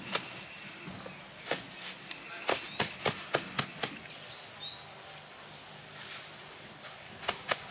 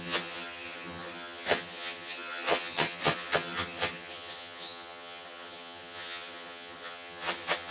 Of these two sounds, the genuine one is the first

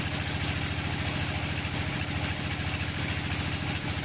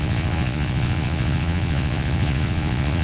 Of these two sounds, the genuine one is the first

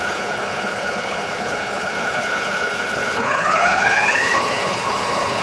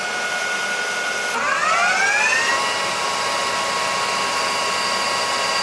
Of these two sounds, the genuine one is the second